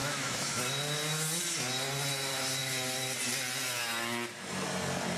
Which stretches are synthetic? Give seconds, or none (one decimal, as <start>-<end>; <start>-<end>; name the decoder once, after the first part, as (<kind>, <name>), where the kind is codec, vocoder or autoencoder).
0.0-0.6 (autoencoder, DAC-VAE)